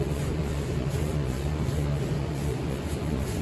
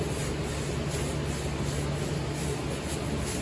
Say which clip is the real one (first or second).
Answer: second